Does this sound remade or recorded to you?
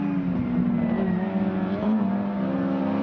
recorded